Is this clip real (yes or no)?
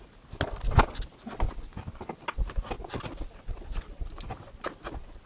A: yes